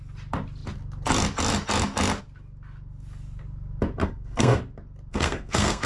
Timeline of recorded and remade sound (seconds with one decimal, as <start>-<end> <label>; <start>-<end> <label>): 0.0-4.0 recorded; 4.0-4.6 remade; 4.6-5.1 recorded; 5.1-5.9 remade